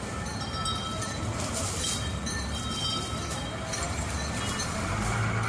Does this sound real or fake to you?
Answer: real